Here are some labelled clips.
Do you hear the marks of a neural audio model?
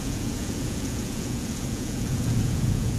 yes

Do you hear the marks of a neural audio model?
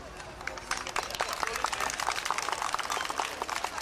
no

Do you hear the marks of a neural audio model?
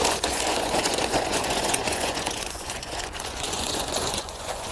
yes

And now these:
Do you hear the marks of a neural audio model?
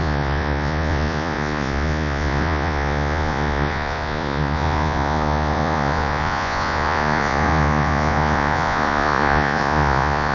yes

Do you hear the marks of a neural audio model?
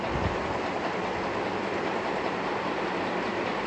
no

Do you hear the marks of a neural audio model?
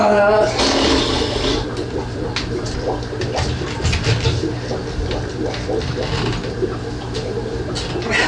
no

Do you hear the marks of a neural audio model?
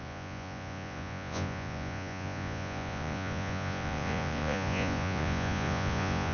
yes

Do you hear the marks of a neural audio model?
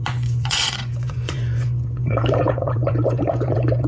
yes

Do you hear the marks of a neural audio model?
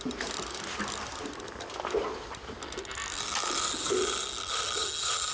no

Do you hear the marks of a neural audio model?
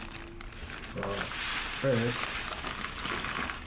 no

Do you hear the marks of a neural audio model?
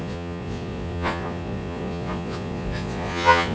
yes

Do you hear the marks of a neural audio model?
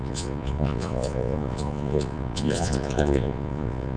yes